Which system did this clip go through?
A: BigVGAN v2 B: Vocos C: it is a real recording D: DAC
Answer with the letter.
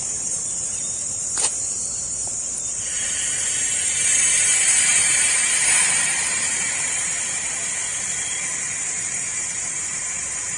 A